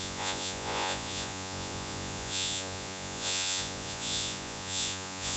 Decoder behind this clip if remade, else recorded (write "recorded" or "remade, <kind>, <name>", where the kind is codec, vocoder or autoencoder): remade, vocoder, Vocos